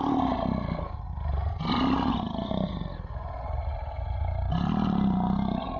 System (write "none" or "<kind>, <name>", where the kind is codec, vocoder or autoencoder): none